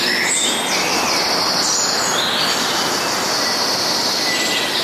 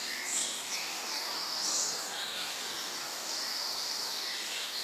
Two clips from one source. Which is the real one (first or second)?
first